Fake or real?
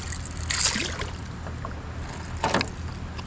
real